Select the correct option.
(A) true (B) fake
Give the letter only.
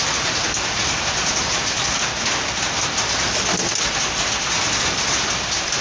A